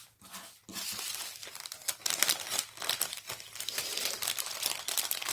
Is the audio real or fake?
real